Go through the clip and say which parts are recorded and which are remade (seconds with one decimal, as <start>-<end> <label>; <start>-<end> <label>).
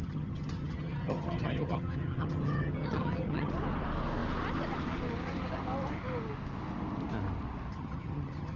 0.0-3.5 remade; 3.5-7.7 recorded; 7.7-8.6 remade